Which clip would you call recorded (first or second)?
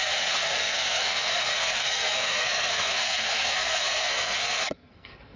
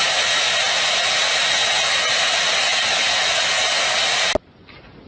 second